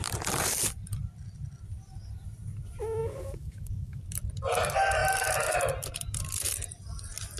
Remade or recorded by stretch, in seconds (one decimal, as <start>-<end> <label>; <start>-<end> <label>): 0.0-3.0 recorded; 3.0-4.0 remade; 4.0-7.4 recorded